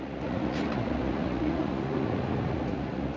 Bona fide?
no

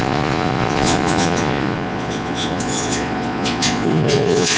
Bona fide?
no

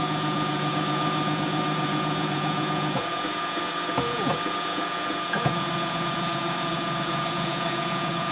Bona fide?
no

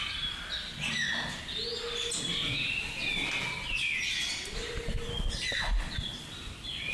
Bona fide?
yes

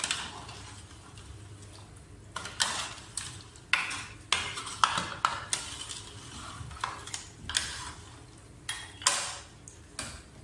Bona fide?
yes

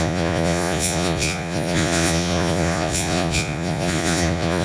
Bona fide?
no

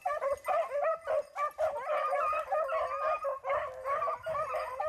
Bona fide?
yes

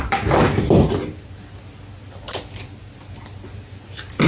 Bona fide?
yes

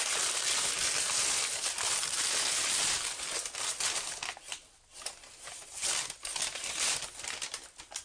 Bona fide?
yes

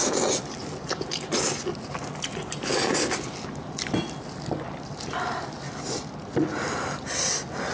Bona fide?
yes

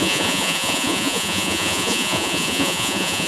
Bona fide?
no